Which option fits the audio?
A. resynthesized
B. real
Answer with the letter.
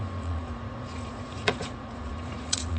A